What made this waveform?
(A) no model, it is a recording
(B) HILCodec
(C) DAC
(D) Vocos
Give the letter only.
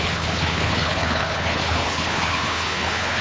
B